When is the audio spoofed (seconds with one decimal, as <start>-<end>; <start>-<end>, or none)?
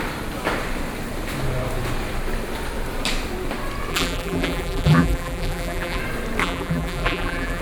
3.9-6.0; 6.4-7.6